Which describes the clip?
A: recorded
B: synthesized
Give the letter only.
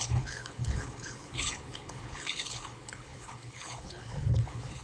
B